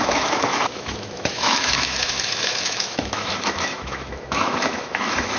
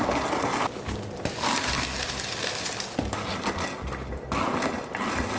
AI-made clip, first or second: first